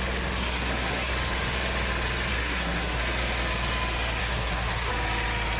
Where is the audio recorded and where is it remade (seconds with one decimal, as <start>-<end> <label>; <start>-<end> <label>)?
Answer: 0.0-0.4 recorded; 0.4-1.1 remade; 1.1-2.3 recorded; 2.3-3.0 remade; 3.0-4.2 recorded; 4.2-4.9 remade; 4.9-5.6 recorded